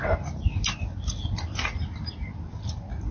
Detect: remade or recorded recorded